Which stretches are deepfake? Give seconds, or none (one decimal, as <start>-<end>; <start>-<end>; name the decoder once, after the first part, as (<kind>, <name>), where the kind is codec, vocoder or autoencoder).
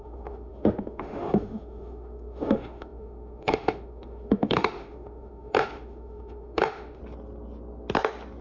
0.0-7.0 (autoencoder, DAC-VAE)